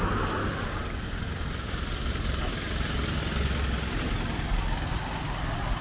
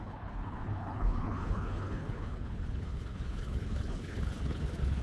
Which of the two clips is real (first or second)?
first